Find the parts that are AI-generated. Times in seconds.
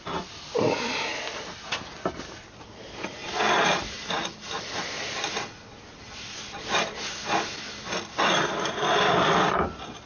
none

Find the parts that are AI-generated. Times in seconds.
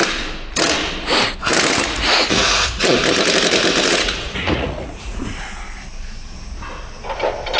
1.7-3.0 (vocoder, Vocos); 3.8-5.2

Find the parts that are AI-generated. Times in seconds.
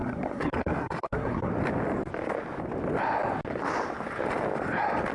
0.0-1.5 (codec, SNAC)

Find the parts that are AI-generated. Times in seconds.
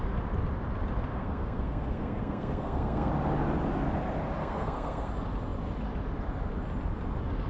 1.1-3.1 (codec, SNAC); 4.4-5.1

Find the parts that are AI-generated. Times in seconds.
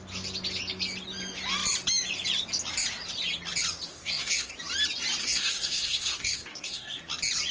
3.9-4.5 (codec, SNAC); 5.2-7.0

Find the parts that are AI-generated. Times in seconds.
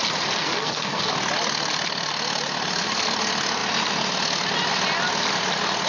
0.4-1.1 (codec, SNAC)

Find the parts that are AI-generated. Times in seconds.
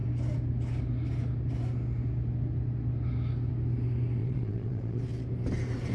4.2-5.0 (vocoder, Vocos)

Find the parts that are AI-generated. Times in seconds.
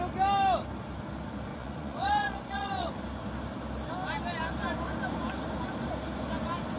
1.5-2.9 (vocoder, Vocos)